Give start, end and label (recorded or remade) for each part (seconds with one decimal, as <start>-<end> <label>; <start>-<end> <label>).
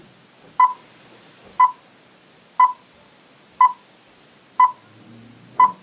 0.0-0.7 recorded; 0.7-1.6 remade; 1.6-2.7 recorded; 2.7-4.4 remade; 4.4-5.8 recorded